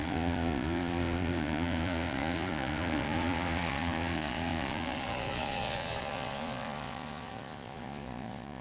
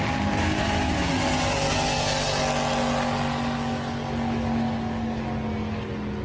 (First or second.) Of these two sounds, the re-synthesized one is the first